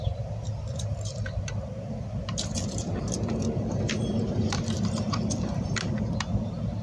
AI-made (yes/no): yes